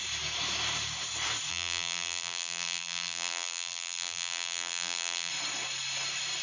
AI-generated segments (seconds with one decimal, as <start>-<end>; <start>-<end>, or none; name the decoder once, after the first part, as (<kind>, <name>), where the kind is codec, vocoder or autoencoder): 1.5-5.3 (vocoder, BigVGAN v2)